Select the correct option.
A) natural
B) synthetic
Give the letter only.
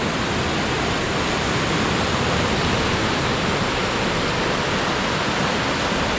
A